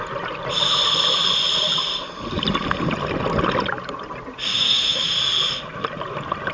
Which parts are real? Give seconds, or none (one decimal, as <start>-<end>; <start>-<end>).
0.0-4.5; 5.1-6.5